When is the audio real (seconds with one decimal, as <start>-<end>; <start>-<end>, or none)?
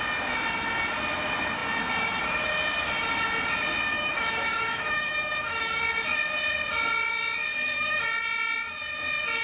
0.0-3.9; 5.8-7.5; 8.0-9.4